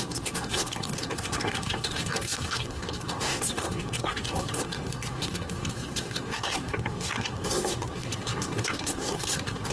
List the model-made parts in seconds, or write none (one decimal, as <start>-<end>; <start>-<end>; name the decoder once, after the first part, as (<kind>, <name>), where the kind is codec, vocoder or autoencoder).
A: 0.0-9.7 (codec, SNAC)